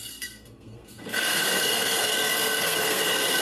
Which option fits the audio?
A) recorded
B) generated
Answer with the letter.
B